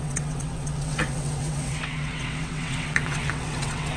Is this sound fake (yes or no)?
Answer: yes